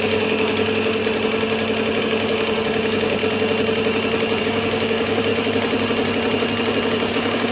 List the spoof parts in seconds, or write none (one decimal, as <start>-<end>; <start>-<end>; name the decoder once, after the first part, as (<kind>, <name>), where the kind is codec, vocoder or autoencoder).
0.0-1.0 (codec, DAC); 2.0-3.2; 4.4-5.3; 7.1-7.5